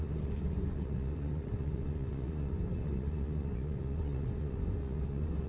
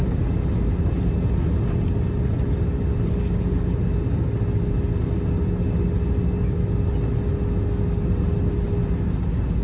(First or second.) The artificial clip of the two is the first